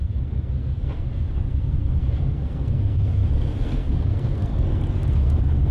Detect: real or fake fake